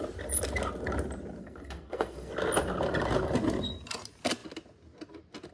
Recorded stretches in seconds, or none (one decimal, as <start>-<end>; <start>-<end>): 0.0-1.4; 2.3-5.5